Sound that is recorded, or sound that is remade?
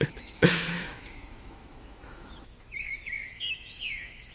remade